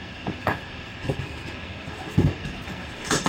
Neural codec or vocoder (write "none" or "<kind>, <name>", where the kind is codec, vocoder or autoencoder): codec, SNAC